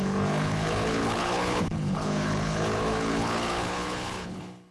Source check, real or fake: fake